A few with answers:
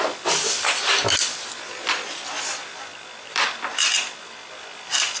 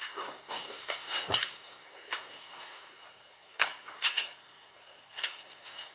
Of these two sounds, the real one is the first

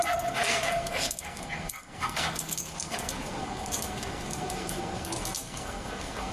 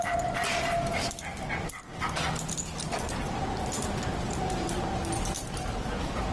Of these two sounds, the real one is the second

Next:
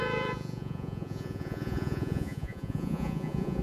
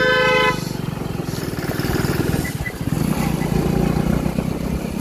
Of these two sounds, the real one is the second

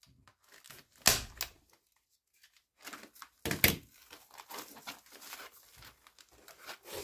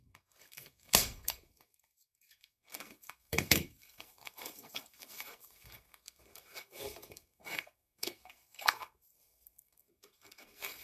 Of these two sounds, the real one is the first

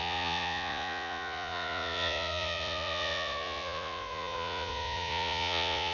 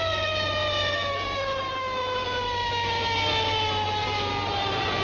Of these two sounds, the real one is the second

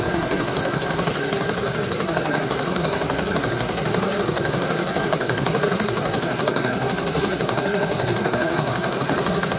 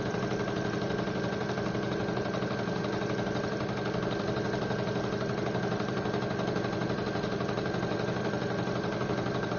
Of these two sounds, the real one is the second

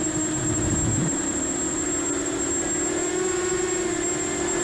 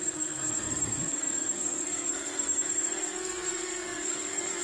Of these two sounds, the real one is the first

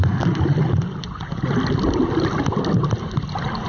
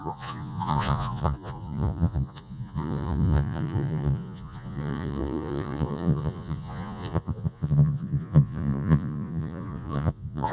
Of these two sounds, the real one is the first